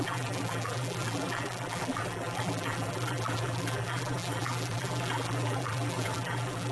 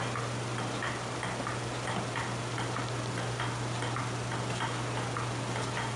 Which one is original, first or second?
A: second